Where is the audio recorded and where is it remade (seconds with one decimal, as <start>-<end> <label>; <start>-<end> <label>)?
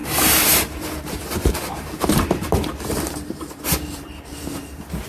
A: 0.0-5.1 remade